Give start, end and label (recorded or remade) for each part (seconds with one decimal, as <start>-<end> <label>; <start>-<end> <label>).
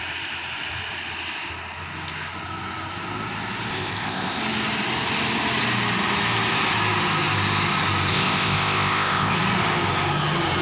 0.0-3.7 recorded; 3.7-4.4 remade; 4.4-8.1 recorded; 8.1-9.3 remade; 9.3-10.6 recorded